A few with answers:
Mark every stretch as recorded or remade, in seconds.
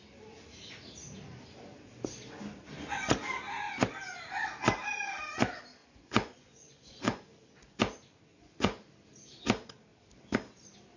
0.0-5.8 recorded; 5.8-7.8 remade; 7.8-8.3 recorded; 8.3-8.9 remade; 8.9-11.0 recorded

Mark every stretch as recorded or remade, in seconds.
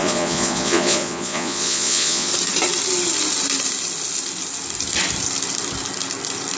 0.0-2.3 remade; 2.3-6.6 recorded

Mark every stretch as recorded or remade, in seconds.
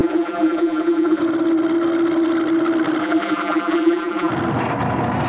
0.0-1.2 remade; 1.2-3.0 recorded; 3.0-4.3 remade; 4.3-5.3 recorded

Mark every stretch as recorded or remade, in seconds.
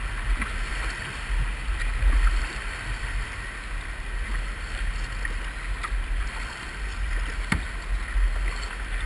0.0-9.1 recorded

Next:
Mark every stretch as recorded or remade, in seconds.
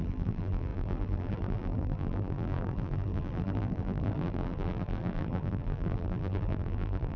0.0-7.2 remade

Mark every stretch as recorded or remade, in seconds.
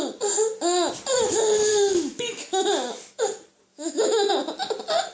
0.0-1.7 recorded; 1.7-3.2 remade; 3.2-3.7 recorded; 3.7-4.3 remade; 4.3-5.1 recorded